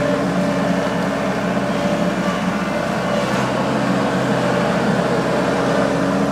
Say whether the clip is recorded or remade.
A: recorded